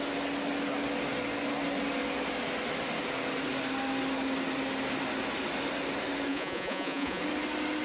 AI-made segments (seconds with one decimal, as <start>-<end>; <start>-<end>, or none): 6.3-7.2